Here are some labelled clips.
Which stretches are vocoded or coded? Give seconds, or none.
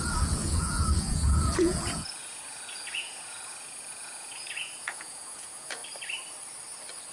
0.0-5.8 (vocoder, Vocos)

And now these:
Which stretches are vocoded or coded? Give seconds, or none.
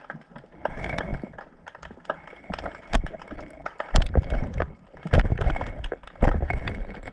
none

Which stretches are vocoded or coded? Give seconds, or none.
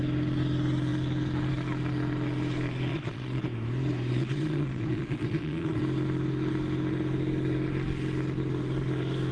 2.9-3.4 (vocoder, Vocos); 4.1-5.8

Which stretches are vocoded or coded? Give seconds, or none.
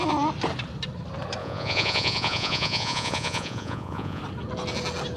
1.4-4.2 (vocoder, Vocos)